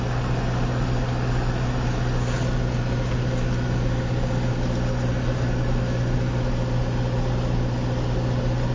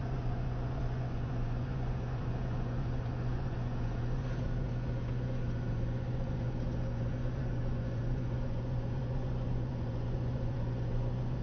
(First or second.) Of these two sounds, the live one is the first